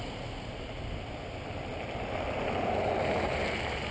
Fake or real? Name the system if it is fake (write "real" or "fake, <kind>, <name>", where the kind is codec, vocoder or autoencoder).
real